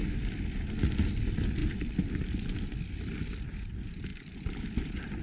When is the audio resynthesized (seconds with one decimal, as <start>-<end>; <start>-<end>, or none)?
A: none